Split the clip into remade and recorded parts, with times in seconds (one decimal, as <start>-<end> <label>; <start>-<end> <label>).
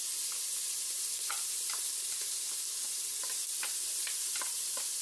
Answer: 0.0-5.0 recorded